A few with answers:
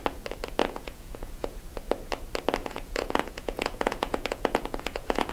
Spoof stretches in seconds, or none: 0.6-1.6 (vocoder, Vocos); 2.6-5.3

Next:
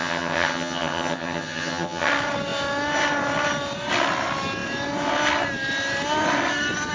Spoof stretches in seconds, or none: 0.0-2.1 (vocoder, HiFi-GAN)

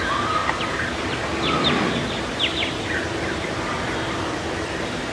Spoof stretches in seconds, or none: none